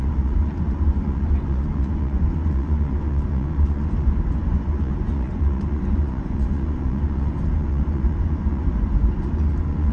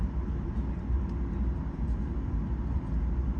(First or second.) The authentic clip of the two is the second